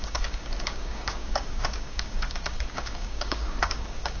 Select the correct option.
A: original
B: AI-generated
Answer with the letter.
B